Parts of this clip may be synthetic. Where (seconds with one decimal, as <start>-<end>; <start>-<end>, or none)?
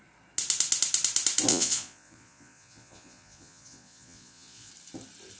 1.5-4.7